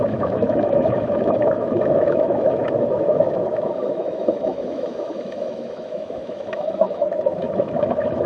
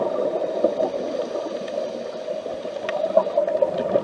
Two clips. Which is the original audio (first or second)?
second